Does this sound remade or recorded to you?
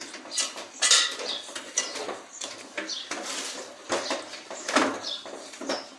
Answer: recorded